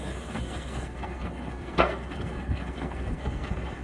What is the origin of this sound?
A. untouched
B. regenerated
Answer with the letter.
B